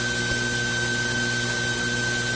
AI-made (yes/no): no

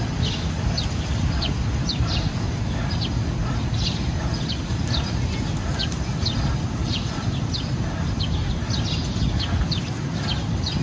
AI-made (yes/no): no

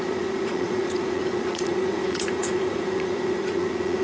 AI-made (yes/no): yes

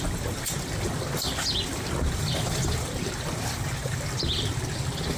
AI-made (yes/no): no